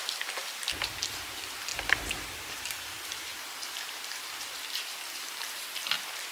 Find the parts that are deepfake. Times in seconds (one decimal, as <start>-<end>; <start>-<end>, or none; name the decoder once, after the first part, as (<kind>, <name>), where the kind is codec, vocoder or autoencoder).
1.7-3.7 (vocoder, BigVGAN v2)